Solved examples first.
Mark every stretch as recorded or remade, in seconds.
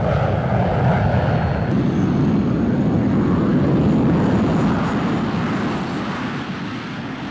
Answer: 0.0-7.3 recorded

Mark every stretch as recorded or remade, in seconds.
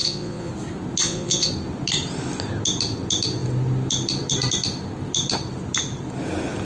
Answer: 0.0-0.5 remade; 0.5-1.0 recorded; 1.0-1.5 remade; 1.5-6.6 recorded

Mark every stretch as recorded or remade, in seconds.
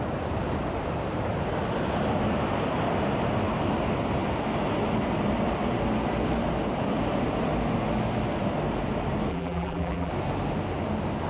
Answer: 0.0-9.3 recorded; 9.3-10.1 remade; 10.1-11.3 recorded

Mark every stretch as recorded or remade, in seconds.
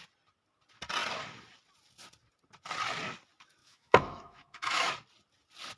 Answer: 0.0-3.6 recorded; 3.6-4.9 remade; 4.9-5.8 recorded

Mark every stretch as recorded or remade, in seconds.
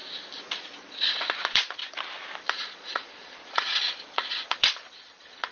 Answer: 0.0-0.6 recorded; 0.6-1.8 remade; 1.8-2.4 recorded; 2.4-5.5 remade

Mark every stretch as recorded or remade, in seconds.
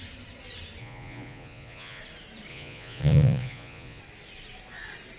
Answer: 0.0-0.8 recorded; 0.8-2.0 remade; 2.0-2.5 recorded; 2.5-4.0 remade; 4.0-5.2 recorded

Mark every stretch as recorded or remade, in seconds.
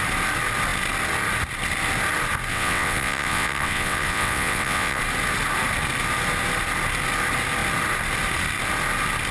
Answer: 0.0-2.5 recorded; 2.5-5.0 remade; 5.0-9.3 recorded